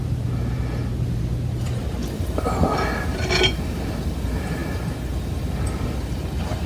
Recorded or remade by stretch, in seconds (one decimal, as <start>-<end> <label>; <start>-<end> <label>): 0.0-6.7 recorded